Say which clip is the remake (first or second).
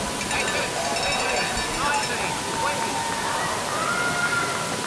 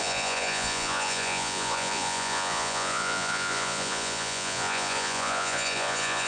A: second